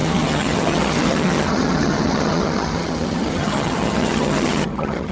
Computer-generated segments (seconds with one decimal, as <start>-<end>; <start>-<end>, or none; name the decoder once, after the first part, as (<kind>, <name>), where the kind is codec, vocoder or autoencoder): 0.0-5.1 (vocoder, HiFi-GAN)